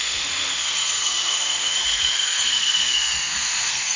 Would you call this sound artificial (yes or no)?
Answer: yes